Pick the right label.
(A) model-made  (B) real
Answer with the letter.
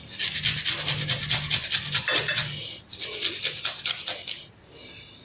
B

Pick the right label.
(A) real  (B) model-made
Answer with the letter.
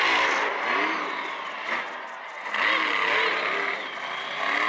A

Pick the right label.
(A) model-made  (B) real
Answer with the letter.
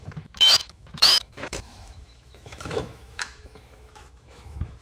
A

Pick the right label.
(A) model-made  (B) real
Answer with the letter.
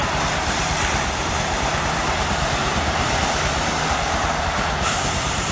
A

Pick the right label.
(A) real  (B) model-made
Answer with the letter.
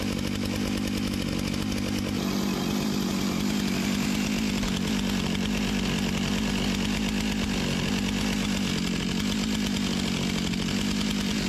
A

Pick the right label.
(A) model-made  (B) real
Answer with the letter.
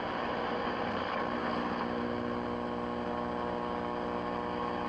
B